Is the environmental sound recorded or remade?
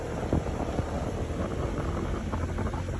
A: recorded